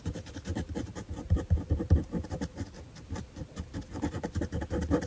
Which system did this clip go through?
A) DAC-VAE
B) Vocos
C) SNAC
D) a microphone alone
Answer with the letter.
D